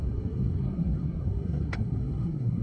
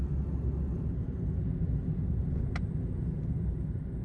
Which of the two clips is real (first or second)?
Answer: second